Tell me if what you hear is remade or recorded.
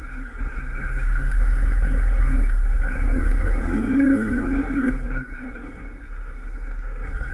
remade